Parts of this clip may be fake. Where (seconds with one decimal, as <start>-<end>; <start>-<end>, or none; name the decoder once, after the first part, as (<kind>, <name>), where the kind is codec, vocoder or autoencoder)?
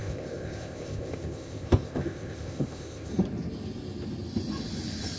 0.0-3.1 (codec, ZipCodec)